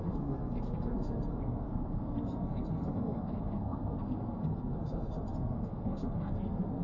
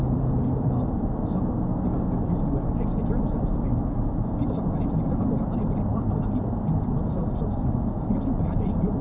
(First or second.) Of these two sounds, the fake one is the first